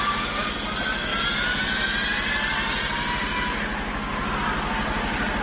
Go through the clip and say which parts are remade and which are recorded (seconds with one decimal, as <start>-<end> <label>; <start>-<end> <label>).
0.0-5.4 recorded